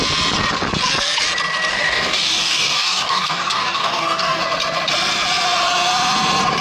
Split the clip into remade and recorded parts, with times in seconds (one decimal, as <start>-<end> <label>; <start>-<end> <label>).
0.0-1.7 recorded; 1.7-4.4 remade; 4.4-6.6 recorded